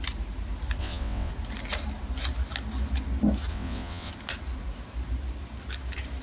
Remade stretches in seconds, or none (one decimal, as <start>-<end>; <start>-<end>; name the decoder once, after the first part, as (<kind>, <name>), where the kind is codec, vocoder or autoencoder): 0.8-1.3 (vocoder, WaveNeXt); 3.5-4.1